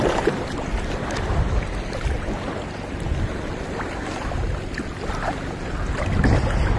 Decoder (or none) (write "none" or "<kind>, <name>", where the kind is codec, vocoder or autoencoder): none